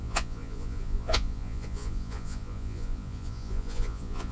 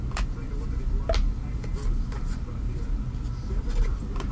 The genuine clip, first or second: second